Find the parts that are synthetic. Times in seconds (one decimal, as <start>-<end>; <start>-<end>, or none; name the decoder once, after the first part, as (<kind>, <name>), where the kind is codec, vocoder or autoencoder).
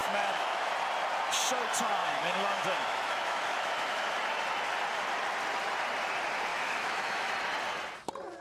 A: 0.0-0.7 (autoencoder, DAC-VAE); 2.0-4.1; 6.5-7.3